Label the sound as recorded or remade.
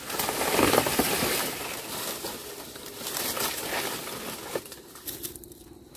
recorded